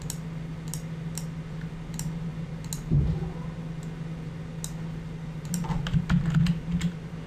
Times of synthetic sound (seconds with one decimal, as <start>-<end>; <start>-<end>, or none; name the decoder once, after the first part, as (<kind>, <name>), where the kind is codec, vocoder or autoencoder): none